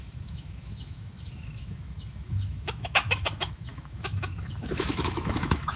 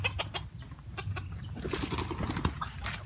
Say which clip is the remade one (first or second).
first